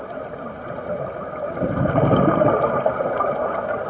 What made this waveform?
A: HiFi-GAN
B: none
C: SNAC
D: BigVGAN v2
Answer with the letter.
B